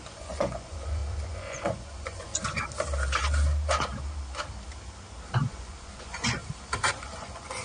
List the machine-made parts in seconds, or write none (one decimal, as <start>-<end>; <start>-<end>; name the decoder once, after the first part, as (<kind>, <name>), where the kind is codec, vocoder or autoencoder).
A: 0.0-2.3 (vocoder, Vocos); 5.3-6.4; 6.9-7.6